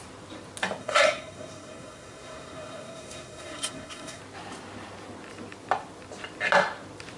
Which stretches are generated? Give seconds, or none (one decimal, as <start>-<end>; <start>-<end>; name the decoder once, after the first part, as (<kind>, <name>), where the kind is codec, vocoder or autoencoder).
0.8-4.2 (codec, SNAC)

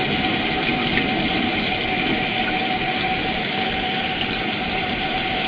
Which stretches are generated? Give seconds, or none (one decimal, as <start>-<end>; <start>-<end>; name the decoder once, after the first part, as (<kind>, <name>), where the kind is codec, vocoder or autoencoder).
none

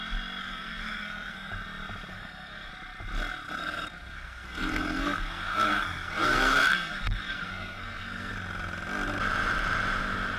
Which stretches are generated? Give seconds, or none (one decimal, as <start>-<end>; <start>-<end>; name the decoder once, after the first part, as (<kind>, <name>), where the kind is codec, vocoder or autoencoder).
0.4-1.5 (codec, SNAC); 2.1-2.7; 3.6-8.3

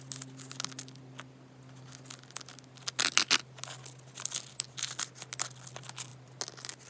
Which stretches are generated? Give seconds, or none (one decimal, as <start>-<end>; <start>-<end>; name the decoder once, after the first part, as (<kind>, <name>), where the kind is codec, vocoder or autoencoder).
none

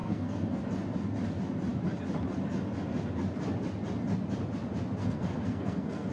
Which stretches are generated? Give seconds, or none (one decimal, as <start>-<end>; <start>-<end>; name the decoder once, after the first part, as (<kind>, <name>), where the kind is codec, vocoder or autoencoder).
0.0-0.6 (codec, SNAC); 5.0-6.1